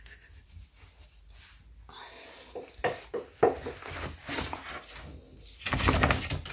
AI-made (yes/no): no